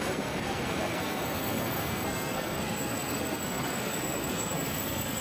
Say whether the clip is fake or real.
fake